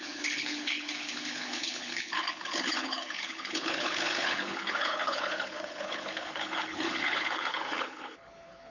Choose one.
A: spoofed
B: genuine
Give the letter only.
A